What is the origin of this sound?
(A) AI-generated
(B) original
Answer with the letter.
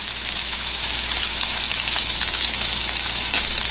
A